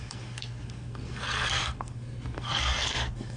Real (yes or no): no